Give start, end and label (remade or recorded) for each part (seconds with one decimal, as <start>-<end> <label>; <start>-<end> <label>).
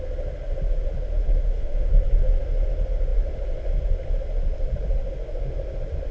0.0-1.1 recorded; 1.1-1.9 remade; 1.9-6.1 recorded